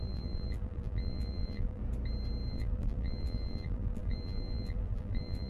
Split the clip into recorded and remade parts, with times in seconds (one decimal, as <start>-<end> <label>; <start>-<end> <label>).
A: 0.0-1.8 remade; 1.8-2.5 recorded; 2.5-5.5 remade